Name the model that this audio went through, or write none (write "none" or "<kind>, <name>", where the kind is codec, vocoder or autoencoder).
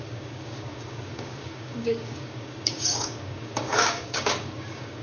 codec, DAC